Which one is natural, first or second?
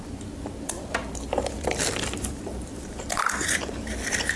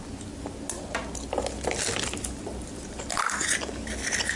second